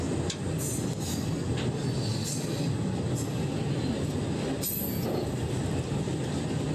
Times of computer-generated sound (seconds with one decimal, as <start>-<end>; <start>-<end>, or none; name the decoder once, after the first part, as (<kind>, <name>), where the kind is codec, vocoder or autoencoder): none